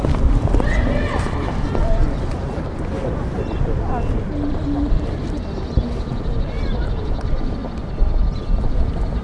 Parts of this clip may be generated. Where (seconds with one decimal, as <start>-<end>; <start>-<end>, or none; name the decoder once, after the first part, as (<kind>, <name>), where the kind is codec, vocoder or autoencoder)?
0.0-2.4 (vocoder, BigVGAN v2); 7.0-7.6; 8.6-9.2